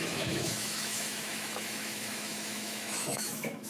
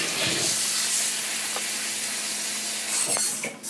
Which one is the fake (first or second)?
first